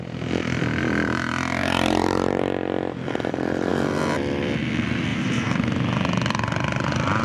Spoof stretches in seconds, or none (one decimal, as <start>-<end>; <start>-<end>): 1.6-2.4; 5.1-5.6